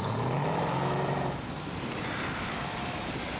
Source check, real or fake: real